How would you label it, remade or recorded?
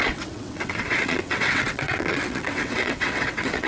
remade